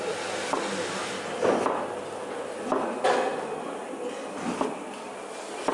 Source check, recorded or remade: recorded